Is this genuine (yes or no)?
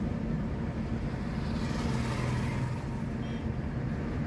yes